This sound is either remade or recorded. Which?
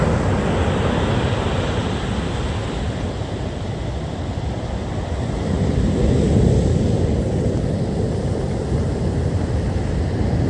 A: recorded